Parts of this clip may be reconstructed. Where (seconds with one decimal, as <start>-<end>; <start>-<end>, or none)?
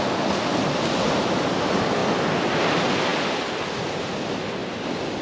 none